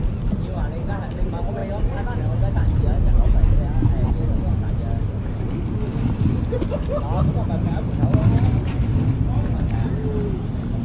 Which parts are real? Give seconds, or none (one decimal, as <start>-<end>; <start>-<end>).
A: 0.0-10.8

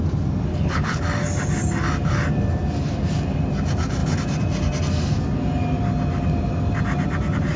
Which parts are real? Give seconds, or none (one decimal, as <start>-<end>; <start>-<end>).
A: 0.0-0.5; 1.0-7.6

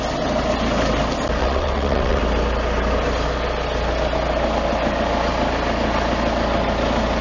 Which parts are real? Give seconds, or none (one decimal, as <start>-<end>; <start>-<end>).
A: 0.0-1.4; 2.2-7.2

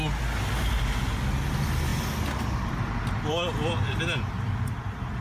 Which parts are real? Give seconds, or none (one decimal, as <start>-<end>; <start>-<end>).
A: 0.0-5.2

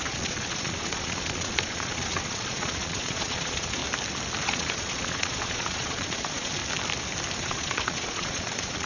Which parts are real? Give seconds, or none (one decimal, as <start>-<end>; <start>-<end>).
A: 3.8-4.4; 6.6-7.4

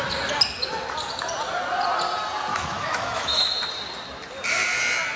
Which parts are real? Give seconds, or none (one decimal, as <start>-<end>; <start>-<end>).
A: 0.0-2.5; 3.6-5.2

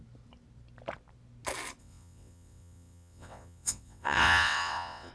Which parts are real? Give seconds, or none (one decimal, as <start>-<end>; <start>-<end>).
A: 0.0-1.8